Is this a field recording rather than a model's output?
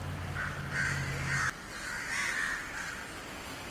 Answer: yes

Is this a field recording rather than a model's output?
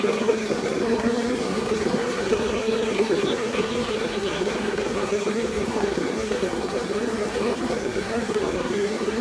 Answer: no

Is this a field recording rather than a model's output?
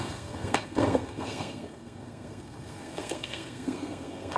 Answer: no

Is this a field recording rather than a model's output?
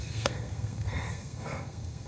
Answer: no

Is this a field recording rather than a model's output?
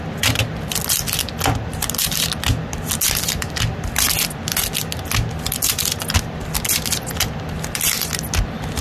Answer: yes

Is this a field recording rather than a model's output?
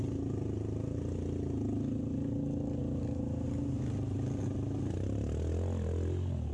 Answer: yes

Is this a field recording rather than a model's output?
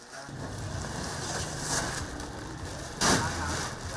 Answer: yes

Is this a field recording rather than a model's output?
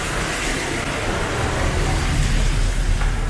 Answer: yes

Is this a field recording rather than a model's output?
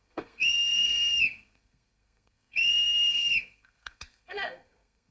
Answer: no